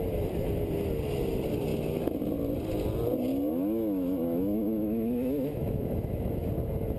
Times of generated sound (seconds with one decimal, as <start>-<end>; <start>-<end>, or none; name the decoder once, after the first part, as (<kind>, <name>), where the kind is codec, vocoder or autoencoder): 3.3-6.5 (autoencoder, DAC-VAE)